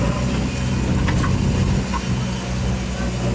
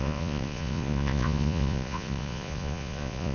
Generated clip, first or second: second